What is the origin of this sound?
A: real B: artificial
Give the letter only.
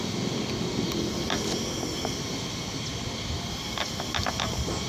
A